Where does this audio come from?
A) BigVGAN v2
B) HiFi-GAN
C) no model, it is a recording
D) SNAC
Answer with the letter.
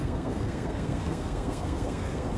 D